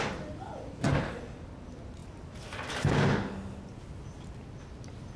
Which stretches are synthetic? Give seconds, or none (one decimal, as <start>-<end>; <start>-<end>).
none